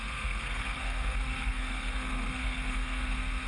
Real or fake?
fake